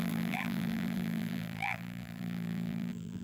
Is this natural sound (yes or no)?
no